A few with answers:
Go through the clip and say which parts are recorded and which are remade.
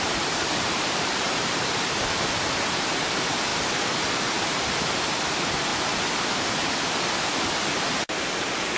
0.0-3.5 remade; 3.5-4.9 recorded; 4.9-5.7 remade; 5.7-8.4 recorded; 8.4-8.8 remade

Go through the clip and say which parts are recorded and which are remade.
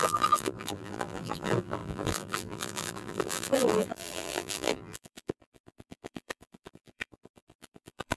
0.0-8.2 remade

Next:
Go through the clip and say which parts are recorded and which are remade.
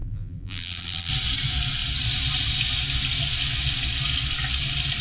0.0-1.1 remade; 1.1-5.0 recorded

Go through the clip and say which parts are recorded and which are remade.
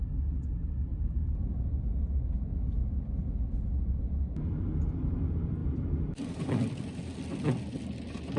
0.0-0.9 recorded; 0.9-1.7 remade; 1.7-5.6 recorded; 5.6-6.5 remade; 6.5-8.4 recorded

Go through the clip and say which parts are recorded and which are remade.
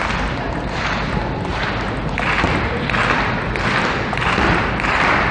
0.0-1.5 remade; 1.5-4.1 recorded; 4.1-5.3 remade